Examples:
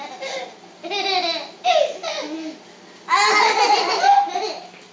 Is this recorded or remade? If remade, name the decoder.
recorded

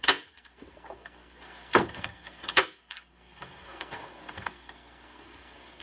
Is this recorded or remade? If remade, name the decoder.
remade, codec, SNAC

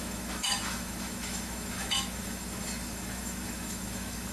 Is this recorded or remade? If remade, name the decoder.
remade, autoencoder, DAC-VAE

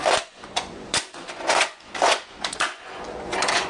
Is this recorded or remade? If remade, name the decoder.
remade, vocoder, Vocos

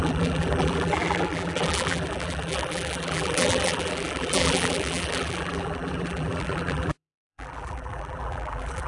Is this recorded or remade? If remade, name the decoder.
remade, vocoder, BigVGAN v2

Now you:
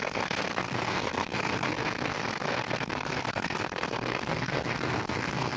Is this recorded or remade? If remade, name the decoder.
remade, codec, SNAC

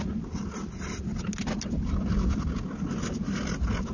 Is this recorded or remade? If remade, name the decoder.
recorded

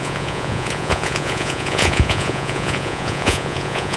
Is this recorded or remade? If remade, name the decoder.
remade, vocoder, Vocos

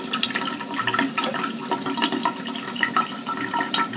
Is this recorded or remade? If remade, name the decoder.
recorded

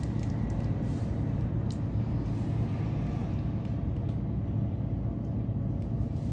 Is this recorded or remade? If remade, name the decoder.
recorded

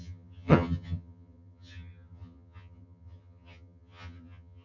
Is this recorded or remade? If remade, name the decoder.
remade, vocoder, HiFi-GAN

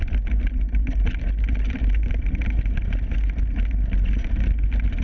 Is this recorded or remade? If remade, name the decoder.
recorded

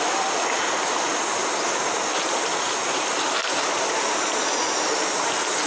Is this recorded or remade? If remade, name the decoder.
recorded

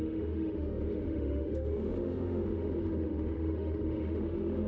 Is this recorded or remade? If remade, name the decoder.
remade, autoencoder, DAC-VAE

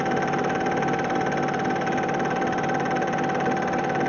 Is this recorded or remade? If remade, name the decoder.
recorded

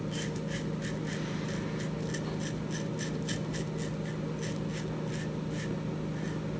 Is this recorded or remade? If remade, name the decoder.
recorded